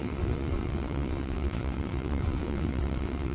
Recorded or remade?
remade